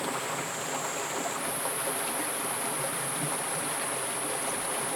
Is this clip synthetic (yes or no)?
no